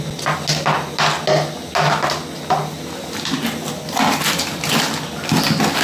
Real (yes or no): yes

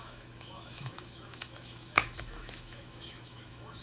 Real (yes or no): no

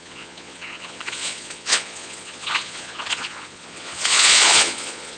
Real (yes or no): no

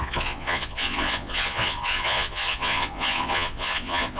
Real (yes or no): no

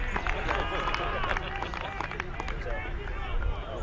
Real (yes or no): yes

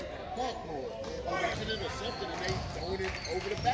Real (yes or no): yes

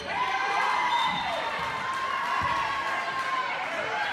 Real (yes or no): yes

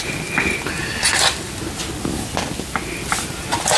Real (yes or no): yes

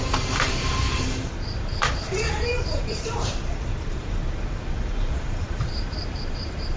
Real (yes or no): no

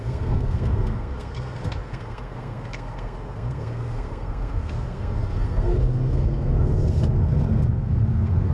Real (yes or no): no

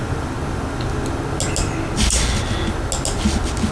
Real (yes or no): yes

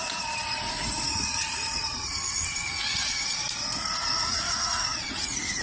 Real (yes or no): no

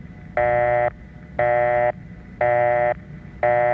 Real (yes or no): yes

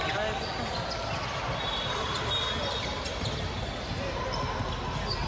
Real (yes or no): yes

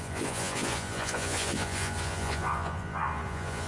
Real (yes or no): no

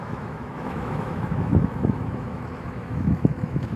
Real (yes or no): no